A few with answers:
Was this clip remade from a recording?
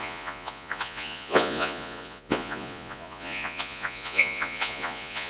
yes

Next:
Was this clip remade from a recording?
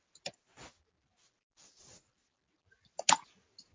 no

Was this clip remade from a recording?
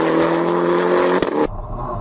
no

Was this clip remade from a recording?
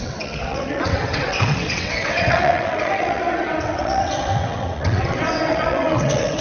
yes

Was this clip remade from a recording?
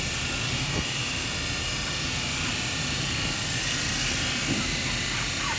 no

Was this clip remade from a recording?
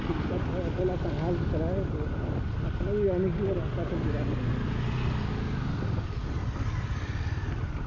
no